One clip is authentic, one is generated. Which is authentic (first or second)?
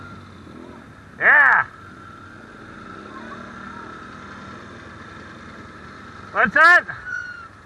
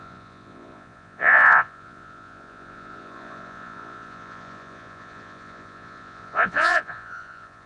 first